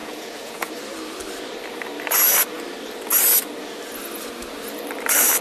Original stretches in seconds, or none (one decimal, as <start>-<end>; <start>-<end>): 0.7-5.4